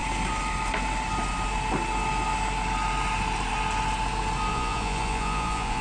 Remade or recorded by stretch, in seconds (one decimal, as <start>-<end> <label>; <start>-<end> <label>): 0.0-4.5 recorded; 4.5-5.8 remade